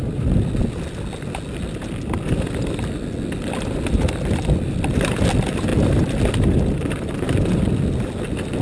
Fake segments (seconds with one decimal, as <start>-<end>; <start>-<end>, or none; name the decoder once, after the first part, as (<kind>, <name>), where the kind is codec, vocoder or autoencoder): none